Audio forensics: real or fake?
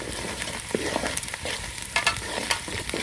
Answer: real